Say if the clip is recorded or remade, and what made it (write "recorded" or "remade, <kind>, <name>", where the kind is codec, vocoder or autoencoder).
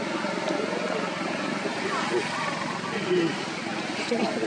recorded